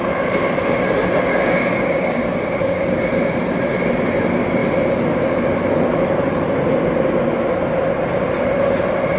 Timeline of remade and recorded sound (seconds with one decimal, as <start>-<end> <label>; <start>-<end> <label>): 0.0-1.3 recorded; 1.3-3.1 remade; 3.1-9.2 recorded